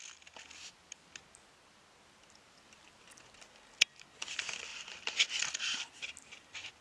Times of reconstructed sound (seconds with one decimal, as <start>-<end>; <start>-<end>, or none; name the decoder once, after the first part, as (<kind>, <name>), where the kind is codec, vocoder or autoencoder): 4.7-6.1 (vocoder, BigVGAN v2)